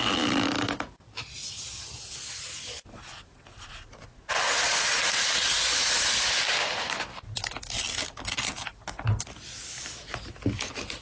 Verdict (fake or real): real